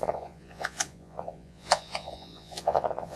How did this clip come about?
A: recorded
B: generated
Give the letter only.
B